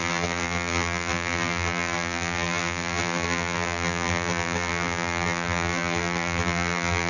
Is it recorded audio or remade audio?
remade